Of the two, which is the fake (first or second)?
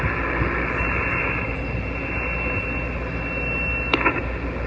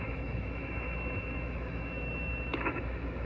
second